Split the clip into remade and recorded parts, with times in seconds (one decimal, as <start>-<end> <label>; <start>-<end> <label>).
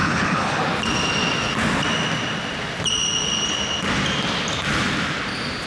0.0-0.6 remade; 0.6-5.7 recorded